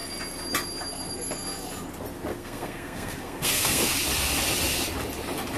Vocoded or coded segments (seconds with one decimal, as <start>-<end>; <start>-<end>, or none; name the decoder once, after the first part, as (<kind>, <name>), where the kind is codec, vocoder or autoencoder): 2.3-4.0 (codec, SNAC)